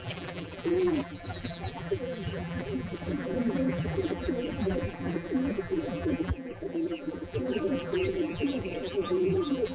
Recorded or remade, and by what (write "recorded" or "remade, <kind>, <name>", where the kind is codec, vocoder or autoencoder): remade, vocoder, BigVGAN v2